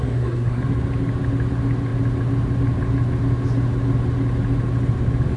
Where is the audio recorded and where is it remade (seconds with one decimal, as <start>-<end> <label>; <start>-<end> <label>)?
0.0-0.6 remade; 0.6-5.4 recorded